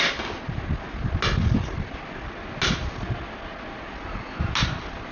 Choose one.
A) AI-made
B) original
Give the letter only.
B